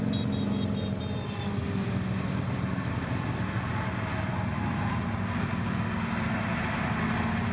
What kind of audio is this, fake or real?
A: real